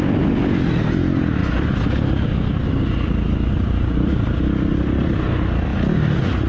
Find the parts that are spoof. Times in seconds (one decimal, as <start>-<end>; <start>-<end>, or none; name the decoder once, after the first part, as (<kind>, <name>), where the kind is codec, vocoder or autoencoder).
none